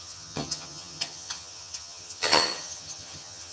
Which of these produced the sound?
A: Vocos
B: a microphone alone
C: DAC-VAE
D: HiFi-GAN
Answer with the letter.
D